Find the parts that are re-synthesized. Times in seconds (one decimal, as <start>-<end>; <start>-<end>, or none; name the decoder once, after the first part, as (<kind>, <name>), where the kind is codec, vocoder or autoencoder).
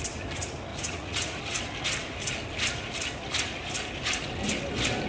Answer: 0.7-1.4 (vocoder, Vocos)